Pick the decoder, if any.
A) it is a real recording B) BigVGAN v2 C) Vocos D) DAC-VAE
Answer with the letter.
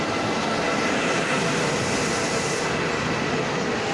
A